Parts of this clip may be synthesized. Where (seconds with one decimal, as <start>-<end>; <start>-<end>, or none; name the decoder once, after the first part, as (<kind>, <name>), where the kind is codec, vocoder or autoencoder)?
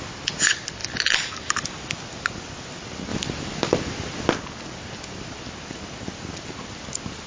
none